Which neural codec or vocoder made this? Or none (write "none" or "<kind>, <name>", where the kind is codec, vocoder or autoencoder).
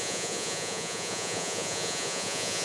vocoder, Vocos